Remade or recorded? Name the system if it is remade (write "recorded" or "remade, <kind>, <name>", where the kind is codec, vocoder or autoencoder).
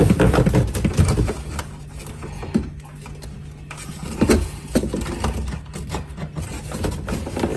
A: recorded